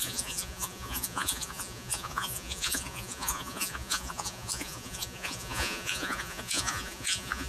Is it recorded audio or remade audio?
remade